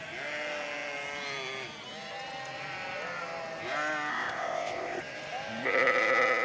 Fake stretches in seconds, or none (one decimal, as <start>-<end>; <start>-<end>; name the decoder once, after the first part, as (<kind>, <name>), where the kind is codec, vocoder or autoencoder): 4.1-5.0 (codec, ZipCodec)